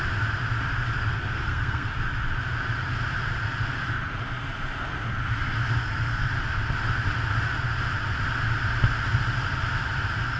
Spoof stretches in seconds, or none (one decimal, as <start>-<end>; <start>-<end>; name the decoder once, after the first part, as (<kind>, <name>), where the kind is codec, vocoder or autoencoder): 1.1-1.9 (codec, SNAC); 5.8-6.3

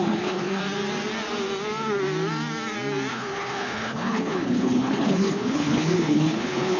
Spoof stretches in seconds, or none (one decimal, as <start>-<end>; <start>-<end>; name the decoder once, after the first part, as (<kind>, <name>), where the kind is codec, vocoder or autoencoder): 0.0-0.6 (codec, HILCodec); 3.1-6.8

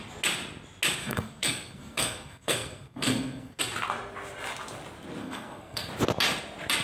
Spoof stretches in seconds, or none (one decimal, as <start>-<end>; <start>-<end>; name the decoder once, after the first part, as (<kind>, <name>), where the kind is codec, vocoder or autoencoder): 1.0-3.6 (codec, SNAC); 5.2-5.9

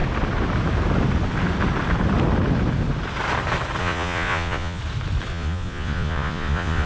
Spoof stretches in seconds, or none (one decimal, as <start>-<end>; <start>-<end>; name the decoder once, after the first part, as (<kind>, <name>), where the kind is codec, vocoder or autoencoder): 3.8-4.8 (vocoder, Vocos); 5.3-6.9

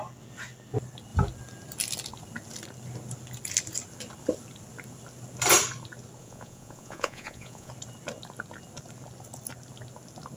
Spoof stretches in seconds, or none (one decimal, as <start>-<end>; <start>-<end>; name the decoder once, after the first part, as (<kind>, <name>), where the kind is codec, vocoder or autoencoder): 6.2-7.7 (vocoder, Vocos)

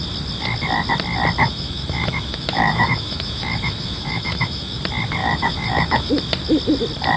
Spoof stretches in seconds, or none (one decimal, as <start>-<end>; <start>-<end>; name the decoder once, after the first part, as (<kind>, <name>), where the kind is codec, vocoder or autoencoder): 1.4-4.8 (autoencoder, DAC-VAE); 5.2-6.1

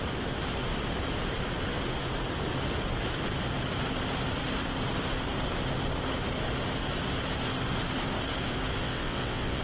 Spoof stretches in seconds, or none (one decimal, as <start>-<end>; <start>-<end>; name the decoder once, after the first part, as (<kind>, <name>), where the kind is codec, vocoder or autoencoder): 8.8-9.6 (vocoder, WaveNeXt)

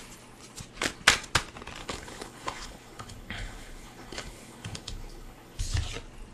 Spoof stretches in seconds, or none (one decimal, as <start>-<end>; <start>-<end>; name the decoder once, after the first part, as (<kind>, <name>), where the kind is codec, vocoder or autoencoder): 1.8-5.6 (codec, HILCodec)